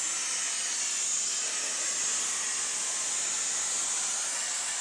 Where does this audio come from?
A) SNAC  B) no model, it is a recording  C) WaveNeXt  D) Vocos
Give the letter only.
B